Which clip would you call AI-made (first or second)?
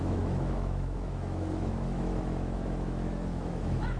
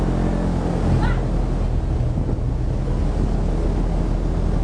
first